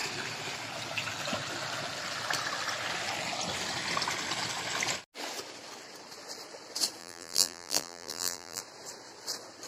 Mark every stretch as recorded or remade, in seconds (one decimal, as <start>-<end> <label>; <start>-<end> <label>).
0.0-7.0 recorded; 7.0-8.6 remade; 8.6-9.7 recorded